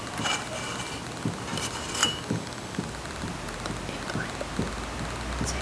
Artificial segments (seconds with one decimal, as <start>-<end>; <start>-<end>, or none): 2.0-2.8